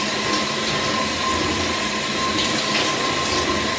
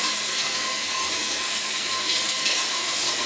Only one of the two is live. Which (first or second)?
first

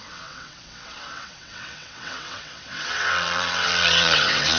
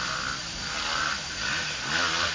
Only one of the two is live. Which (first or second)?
second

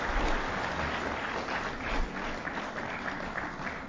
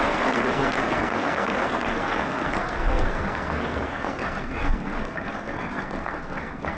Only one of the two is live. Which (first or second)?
first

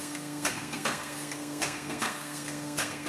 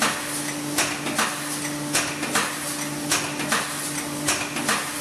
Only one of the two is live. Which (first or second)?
second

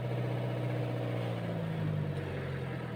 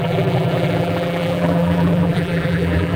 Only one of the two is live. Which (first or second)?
first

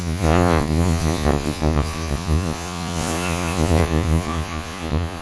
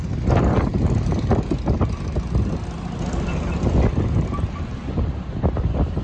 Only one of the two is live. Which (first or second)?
second